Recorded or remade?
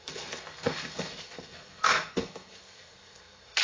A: remade